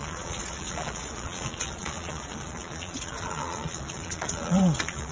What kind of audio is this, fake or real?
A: fake